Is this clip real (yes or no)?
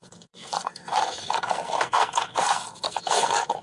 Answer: no